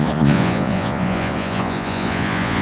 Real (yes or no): no